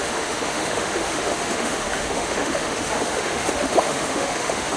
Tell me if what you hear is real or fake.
fake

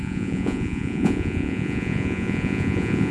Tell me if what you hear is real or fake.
fake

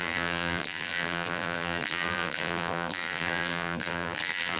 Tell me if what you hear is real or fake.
fake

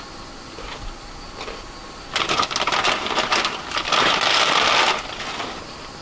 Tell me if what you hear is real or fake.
real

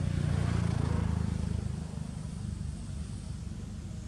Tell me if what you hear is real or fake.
real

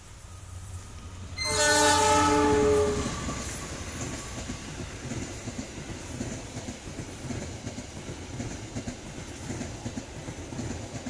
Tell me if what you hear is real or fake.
real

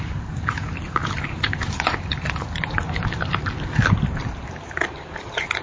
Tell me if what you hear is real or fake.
fake